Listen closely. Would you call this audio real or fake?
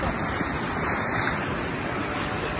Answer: real